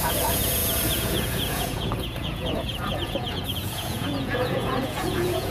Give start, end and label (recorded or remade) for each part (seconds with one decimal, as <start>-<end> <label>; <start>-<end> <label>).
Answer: 0.0-5.5 remade